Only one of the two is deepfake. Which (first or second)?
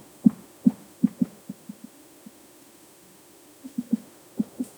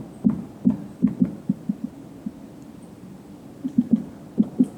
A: first